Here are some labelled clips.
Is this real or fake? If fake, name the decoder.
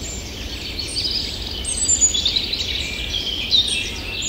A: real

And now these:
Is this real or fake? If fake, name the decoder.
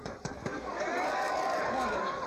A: fake, codec, DAC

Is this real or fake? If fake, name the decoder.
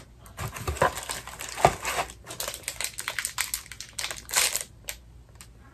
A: real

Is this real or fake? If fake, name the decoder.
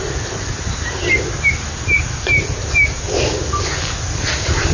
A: real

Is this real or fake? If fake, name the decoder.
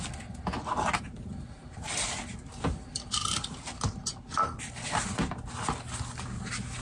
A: real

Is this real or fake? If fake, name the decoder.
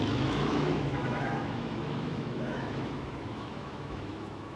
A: fake, autoencoder, DAC-VAE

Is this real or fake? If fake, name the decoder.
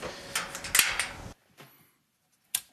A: real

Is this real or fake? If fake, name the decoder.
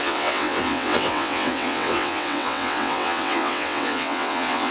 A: fake, vocoder, WaveNeXt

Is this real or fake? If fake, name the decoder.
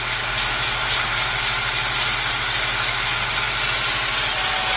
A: real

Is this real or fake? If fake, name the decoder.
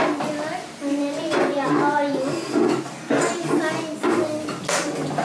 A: real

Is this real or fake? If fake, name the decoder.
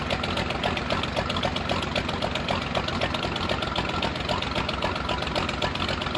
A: real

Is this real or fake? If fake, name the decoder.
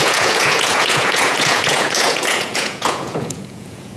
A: fake, vocoder, Vocos